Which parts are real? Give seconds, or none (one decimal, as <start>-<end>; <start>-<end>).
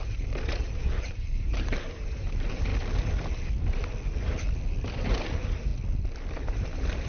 2.7-5.1; 5.7-6.5